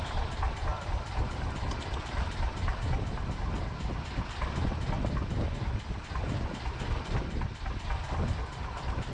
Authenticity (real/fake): fake